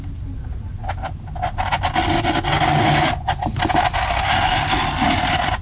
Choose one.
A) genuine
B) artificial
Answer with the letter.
A